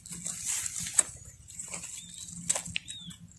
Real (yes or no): yes